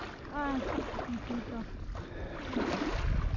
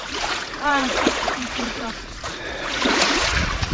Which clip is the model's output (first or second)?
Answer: second